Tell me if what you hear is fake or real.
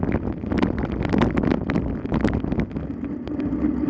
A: real